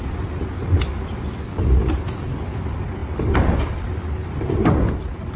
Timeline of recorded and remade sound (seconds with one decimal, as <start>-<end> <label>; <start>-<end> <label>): 0.0-5.4 recorded